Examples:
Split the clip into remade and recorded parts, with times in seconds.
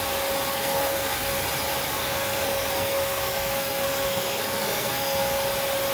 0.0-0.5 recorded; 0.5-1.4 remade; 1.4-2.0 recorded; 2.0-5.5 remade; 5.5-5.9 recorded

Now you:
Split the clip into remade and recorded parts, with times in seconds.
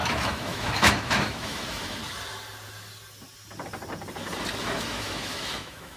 0.0-2.0 remade; 2.0-4.6 recorded; 4.6-6.0 remade